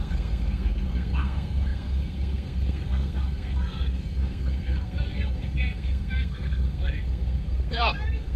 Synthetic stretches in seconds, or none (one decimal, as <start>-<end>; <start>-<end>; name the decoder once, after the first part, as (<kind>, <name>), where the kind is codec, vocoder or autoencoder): 0.0-8.4 (codec, SNAC)